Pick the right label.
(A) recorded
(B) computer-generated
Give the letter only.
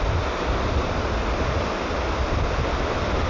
A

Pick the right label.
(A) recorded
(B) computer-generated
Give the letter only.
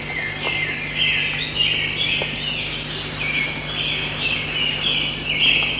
A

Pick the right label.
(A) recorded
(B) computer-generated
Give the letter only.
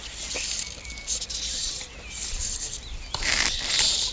A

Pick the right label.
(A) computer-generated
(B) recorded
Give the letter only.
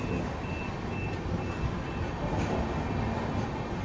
B